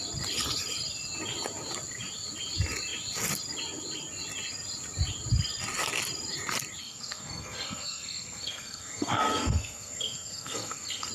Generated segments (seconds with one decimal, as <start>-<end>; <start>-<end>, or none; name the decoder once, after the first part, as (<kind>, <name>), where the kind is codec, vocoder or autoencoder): 6.8-11.1 (codec, SNAC)